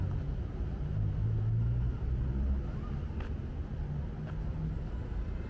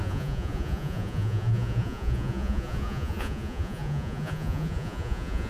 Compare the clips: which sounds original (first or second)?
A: first